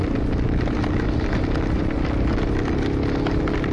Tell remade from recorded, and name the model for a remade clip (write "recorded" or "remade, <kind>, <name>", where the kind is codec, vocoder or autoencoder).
recorded